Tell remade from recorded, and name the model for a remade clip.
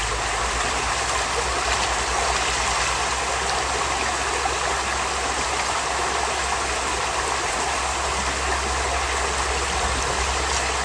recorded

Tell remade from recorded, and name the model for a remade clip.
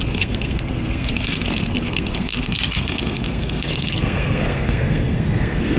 remade, codec, SNAC